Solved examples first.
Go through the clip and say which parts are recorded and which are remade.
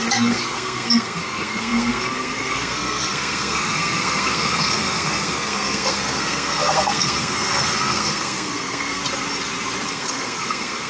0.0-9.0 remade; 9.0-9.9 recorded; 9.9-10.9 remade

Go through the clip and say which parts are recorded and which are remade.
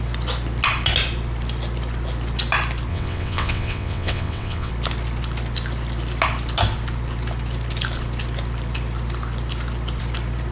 0.0-2.9 recorded; 2.9-4.7 remade; 4.7-10.5 recorded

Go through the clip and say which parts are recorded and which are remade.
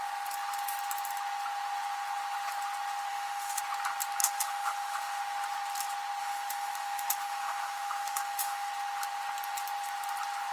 0.0-3.1 recorded; 3.1-3.6 remade; 3.6-4.2 recorded; 4.2-5.2 remade; 5.2-6.2 recorded; 6.2-8.7 remade; 8.7-10.5 recorded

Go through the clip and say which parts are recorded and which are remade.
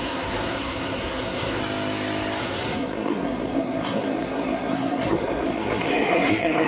0.0-1.6 remade; 1.6-2.4 recorded; 2.4-6.7 remade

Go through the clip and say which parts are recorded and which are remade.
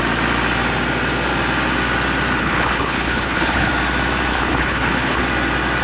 0.0-2.4 recorded; 2.4-3.7 remade; 3.7-4.3 recorded; 4.3-5.2 remade; 5.2-5.8 recorded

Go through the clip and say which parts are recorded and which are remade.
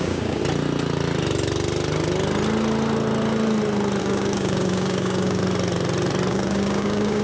0.0-0.4 remade; 0.4-4.0 recorded; 4.0-5.4 remade; 5.4-6.3 recorded; 6.3-7.2 remade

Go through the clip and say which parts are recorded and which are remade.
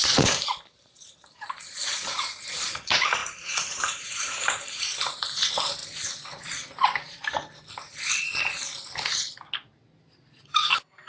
0.0-5.8 remade; 5.8-10.4 recorded; 10.4-11.1 remade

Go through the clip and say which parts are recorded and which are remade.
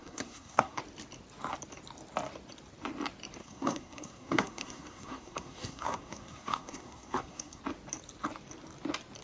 0.0-0.8 remade; 0.8-3.4 recorded; 3.4-7.6 remade; 7.6-9.2 recorded